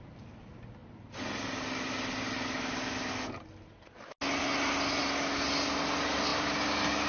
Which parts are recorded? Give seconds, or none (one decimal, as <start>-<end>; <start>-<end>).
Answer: 0.0-7.1